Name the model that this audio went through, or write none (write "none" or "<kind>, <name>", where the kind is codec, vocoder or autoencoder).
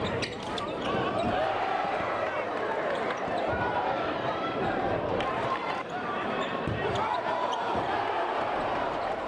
vocoder, BigVGAN v2